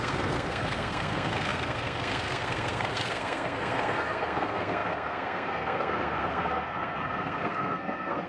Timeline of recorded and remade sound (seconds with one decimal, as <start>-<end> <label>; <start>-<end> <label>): 0.0-8.3 remade